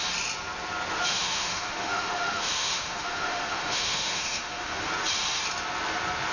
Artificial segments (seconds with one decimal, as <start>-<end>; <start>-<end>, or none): 1.1-4.9